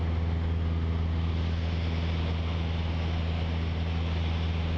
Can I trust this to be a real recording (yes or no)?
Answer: yes